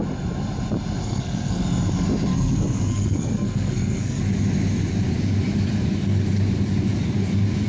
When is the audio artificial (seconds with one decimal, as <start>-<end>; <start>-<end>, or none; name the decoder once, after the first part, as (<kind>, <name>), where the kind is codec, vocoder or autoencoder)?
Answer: 1.0-1.6 (codec, SNAC); 2.3-4.2